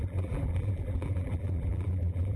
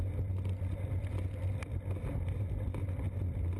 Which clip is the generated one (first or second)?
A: first